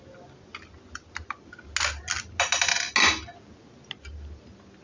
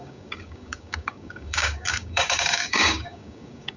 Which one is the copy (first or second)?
second